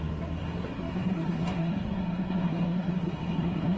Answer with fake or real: fake